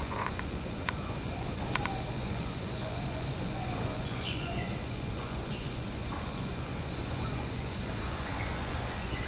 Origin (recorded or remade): remade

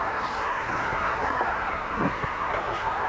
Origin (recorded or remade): remade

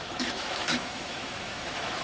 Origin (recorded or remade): remade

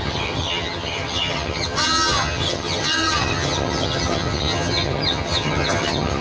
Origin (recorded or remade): remade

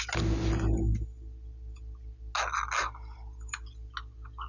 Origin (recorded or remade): recorded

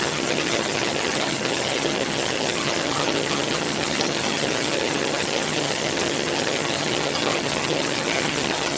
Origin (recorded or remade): remade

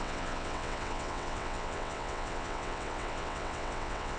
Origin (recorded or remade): remade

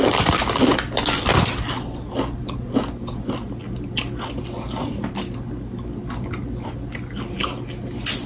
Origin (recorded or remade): recorded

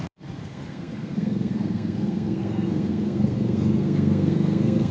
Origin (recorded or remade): remade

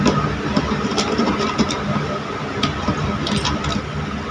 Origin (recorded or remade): recorded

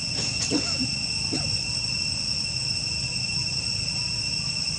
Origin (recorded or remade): recorded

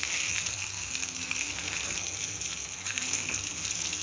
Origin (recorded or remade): remade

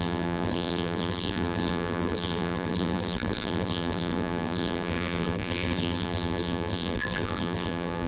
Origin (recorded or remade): remade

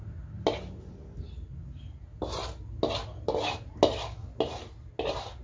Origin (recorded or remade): recorded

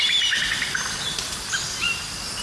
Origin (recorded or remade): recorded